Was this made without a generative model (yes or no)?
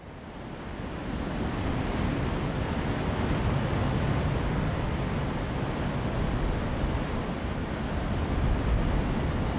yes